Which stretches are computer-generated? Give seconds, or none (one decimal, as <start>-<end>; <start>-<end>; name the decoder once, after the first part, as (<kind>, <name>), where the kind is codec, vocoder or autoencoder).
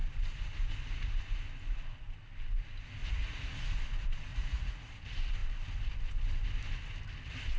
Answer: 3.0-3.6 (vocoder, Vocos); 4.3-4.9